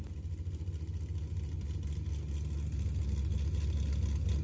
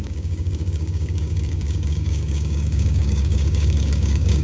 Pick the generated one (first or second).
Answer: second